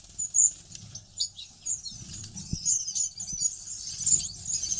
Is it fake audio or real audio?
real